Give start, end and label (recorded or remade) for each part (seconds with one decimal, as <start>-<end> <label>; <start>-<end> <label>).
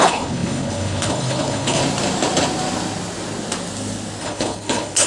0.0-1.8 remade; 1.8-4.2 recorded; 4.2-5.1 remade